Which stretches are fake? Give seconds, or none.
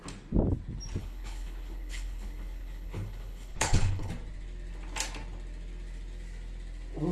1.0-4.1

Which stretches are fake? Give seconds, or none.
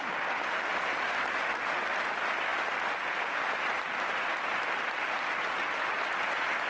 none